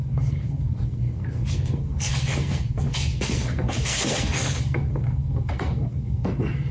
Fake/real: fake